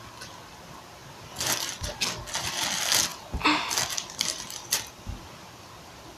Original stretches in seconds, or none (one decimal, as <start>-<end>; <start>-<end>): 0.0-3.1; 5.2-6.2